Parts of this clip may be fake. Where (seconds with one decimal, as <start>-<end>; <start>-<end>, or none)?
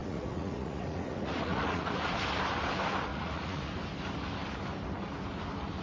0.0-2.1; 3.1-3.7